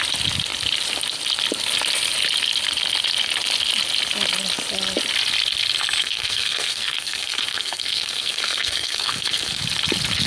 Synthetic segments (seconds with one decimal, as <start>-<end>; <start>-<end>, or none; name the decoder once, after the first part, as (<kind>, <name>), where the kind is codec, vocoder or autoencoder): 6.0-9.6 (codec, SNAC)